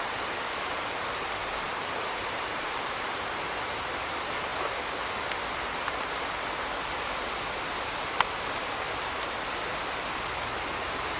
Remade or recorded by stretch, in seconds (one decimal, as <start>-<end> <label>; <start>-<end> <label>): 0.0-1.4 recorded; 1.4-3.4 remade; 3.4-11.2 recorded